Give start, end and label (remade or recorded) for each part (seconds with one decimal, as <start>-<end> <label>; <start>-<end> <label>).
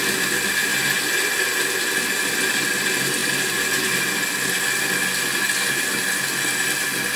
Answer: 0.0-7.2 recorded